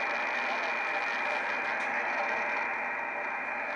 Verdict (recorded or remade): recorded